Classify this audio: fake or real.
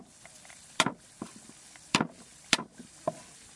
fake